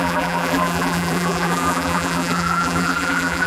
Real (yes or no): no